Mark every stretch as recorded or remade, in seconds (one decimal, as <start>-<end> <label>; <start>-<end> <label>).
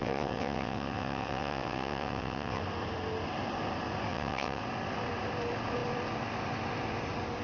0.0-2.6 remade; 2.6-4.1 recorded; 4.1-4.6 remade; 4.6-7.4 recorded